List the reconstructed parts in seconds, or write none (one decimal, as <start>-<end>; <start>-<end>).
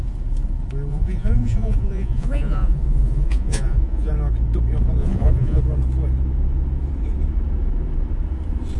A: 0.9-4.1; 5.0-5.6